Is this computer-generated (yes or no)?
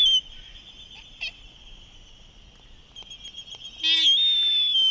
no